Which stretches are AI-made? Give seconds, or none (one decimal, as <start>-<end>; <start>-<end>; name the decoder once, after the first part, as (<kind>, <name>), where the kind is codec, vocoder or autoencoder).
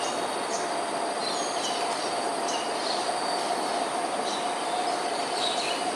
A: none